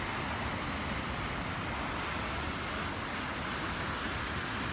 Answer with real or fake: real